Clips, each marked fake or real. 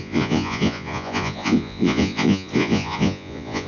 fake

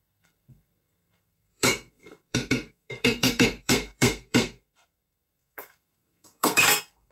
fake